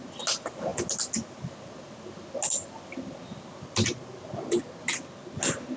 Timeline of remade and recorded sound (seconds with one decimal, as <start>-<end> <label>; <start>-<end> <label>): 0.0-5.8 recorded